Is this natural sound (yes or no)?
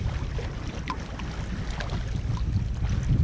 yes